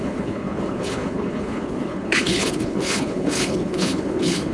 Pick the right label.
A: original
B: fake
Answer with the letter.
B